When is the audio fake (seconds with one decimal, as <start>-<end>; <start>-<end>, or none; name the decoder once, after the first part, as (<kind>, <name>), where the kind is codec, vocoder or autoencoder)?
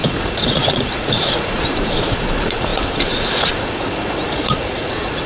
0.0-5.3 (vocoder, Vocos)